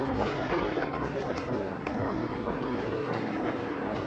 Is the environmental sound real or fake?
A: fake